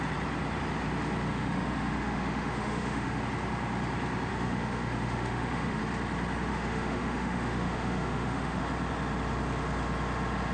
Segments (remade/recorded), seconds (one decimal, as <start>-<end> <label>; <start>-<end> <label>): 0.0-1.3 recorded; 1.3-3.2 remade; 3.2-4.3 recorded; 4.3-5.8 remade; 5.8-6.5 recorded; 6.5-8.6 remade; 8.6-10.5 recorded